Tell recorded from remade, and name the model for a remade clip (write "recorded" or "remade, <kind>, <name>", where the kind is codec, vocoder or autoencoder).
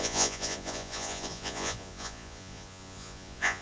remade, vocoder, Vocos